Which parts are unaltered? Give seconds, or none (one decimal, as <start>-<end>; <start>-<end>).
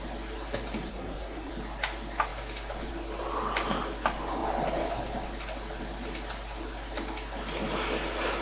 0.0-0.9; 1.5-8.4